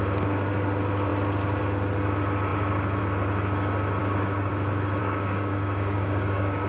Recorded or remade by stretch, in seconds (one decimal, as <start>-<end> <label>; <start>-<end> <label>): 0.0-4.0 recorded; 4.0-4.5 remade; 4.5-5.0 recorded; 5.0-6.7 remade